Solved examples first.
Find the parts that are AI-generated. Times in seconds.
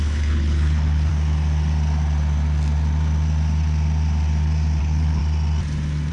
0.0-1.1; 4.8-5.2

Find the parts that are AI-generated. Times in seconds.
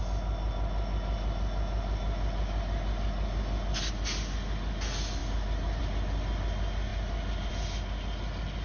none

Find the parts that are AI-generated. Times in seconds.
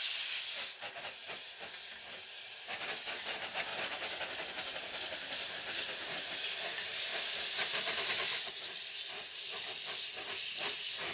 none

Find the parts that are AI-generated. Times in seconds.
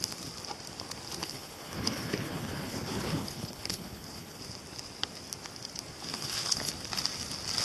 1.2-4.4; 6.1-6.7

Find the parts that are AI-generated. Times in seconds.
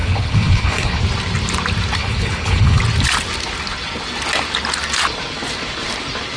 0.0-1.0; 2.0-2.8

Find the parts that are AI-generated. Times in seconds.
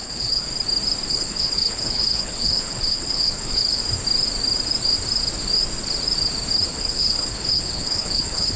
0.0-0.5; 1.1-3.8; 6.7-8.6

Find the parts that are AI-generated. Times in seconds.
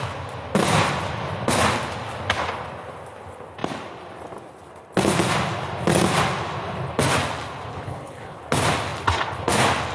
7.7-8.4